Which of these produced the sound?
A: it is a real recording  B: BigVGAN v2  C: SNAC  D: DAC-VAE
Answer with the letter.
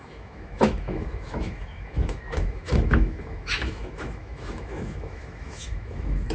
D